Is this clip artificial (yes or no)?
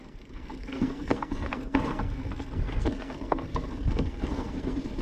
yes